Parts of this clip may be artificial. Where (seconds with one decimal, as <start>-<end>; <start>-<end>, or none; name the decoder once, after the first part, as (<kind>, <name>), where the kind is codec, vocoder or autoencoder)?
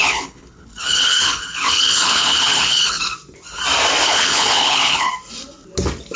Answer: 0.0-3.0 (codec, HILCodec); 4.0-5.1